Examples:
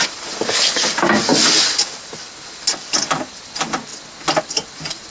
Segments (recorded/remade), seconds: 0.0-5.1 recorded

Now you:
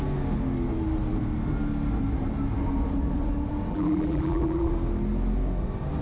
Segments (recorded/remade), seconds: 0.0-3.7 recorded; 3.7-4.7 remade; 4.7-6.0 recorded